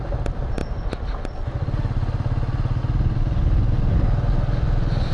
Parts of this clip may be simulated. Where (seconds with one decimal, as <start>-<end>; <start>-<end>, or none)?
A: none